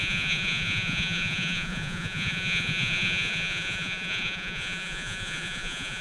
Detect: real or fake fake